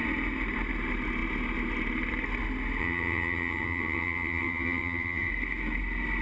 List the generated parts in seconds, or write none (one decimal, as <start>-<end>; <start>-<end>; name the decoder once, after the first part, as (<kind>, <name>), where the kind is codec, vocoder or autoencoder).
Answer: 2.8-5.3 (vocoder, HiFi-GAN)